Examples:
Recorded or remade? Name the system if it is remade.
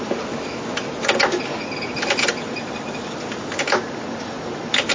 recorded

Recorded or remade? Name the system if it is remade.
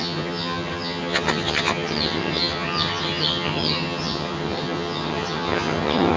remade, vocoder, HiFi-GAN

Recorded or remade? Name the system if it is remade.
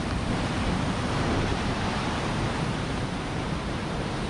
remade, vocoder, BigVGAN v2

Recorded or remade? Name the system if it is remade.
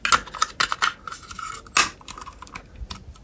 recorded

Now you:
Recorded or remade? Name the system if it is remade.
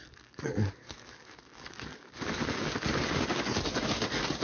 remade, codec, DAC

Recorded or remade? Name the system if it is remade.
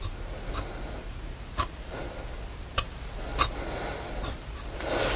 recorded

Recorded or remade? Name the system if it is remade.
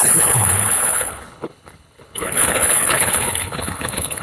remade, codec, HILCodec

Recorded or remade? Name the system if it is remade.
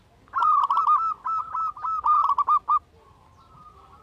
recorded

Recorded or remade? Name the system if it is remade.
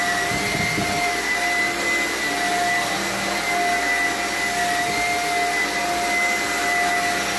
recorded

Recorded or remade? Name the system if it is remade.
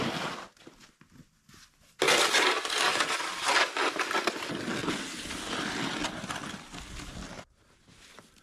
recorded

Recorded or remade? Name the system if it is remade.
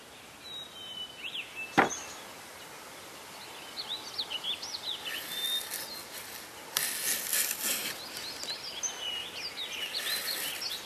recorded